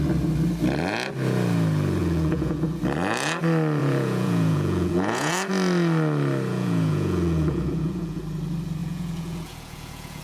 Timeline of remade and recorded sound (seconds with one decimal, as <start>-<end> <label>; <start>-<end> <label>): 0.0-2.0 recorded; 2.0-2.8 remade; 2.8-3.8 recorded; 3.8-5.3 remade; 5.3-6.5 recorded; 6.5-8.2 remade; 8.2-8.8 recorded; 8.8-10.2 remade